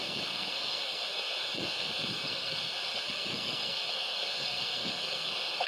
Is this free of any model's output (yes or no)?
no